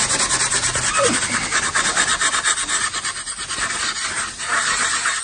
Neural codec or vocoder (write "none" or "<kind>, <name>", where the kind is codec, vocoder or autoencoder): none